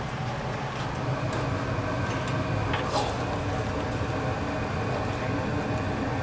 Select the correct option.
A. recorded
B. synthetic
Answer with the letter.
A